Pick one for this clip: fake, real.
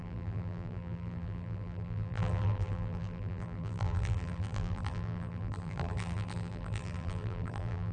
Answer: fake